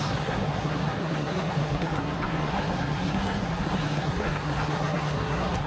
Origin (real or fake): fake